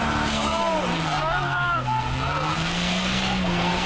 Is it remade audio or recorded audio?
remade